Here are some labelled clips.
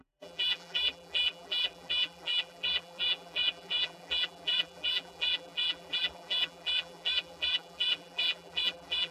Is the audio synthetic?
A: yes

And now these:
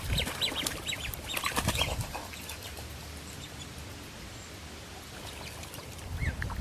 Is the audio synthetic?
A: yes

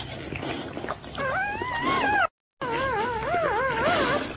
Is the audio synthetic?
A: no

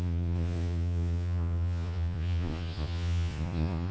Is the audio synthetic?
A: yes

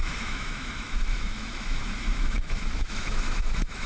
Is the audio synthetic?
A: yes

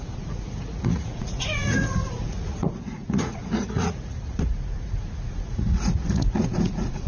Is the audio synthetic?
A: yes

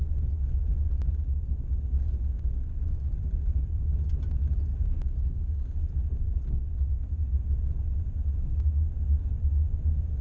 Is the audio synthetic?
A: no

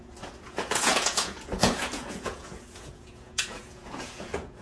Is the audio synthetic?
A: yes